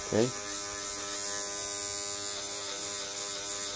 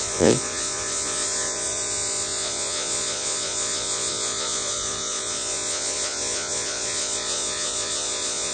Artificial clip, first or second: second